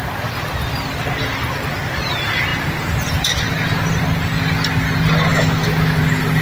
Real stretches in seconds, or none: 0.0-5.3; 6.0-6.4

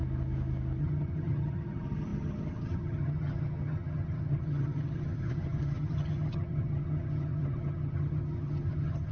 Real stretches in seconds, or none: 0.0-0.8

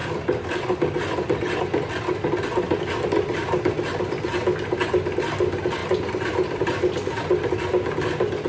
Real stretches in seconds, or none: 1.6-5.8; 7.5-8.5

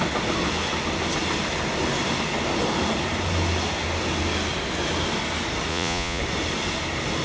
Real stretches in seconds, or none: 0.0-5.7; 6.2-7.2

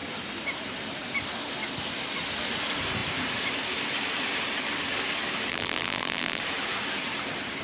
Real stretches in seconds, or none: 0.0-5.5; 6.4-7.6